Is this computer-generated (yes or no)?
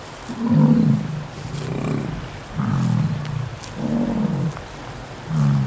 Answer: no